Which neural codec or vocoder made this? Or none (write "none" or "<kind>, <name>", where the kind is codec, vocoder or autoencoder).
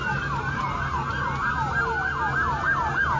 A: none